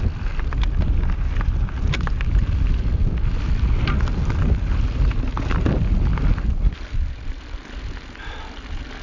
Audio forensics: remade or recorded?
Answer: recorded